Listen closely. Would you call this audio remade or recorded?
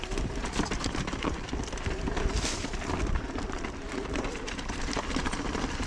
remade